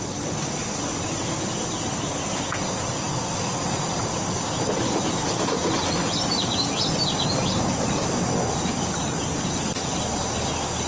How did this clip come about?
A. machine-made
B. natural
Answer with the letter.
B